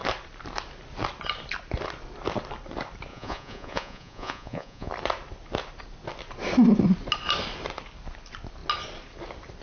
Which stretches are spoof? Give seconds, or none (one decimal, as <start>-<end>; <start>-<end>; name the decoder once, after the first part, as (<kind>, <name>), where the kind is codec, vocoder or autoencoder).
3.1-4.9 (vocoder, Vocos)